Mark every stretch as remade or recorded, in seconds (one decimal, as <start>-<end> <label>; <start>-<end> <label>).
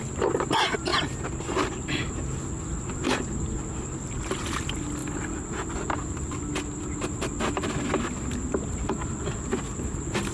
0.0-10.3 recorded